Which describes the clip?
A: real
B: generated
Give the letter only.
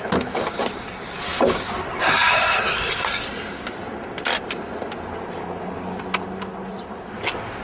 A